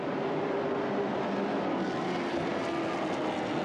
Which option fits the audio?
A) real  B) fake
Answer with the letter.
A